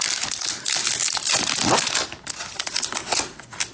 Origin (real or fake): real